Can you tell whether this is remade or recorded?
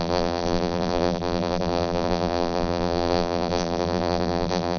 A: remade